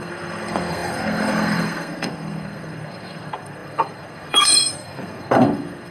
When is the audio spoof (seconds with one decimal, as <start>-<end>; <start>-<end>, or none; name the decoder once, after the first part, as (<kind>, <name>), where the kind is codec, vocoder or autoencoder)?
0.0-5.9 (codec, SNAC)